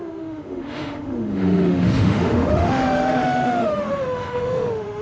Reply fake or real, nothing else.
fake